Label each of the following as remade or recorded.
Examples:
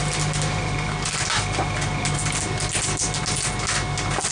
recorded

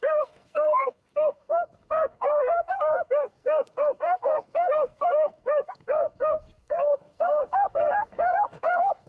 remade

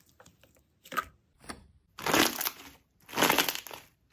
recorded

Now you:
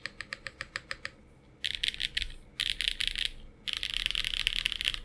recorded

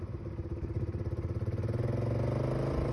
recorded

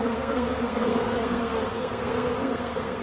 remade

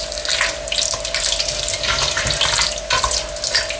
recorded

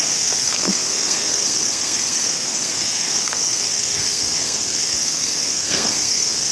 remade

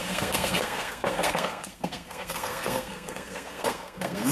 remade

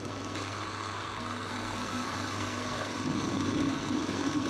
remade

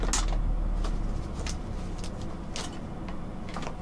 recorded